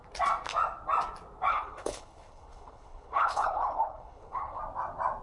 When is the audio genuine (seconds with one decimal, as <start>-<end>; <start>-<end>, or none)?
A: 0.0-1.5; 4.6-5.2